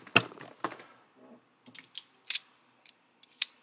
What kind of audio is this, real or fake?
real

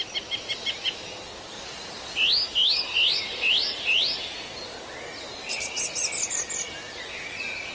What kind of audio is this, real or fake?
real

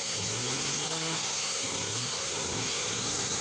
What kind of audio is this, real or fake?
fake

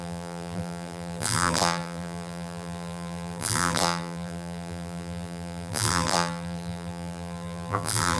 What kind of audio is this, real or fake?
fake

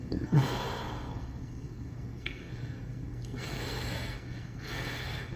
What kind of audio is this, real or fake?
fake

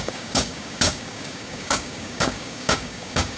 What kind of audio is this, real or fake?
fake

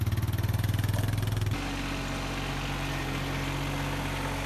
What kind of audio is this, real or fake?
real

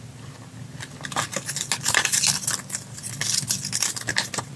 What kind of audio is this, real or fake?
real